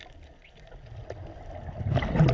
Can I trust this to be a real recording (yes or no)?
yes